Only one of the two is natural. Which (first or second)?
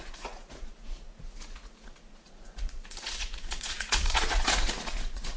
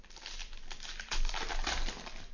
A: second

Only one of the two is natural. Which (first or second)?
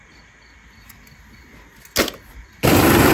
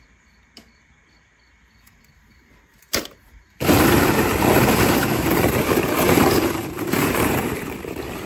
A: first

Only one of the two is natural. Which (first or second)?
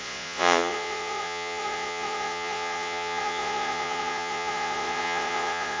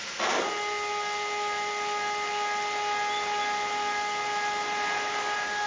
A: second